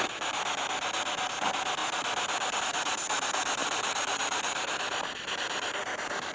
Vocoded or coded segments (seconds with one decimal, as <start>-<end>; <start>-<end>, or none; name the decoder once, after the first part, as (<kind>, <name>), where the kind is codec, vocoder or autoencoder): 3.6-5.3 (vocoder, BigVGAN v2)